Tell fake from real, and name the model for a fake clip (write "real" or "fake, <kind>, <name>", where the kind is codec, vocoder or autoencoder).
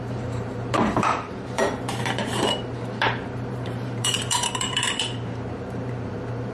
fake, vocoder, BigVGAN v2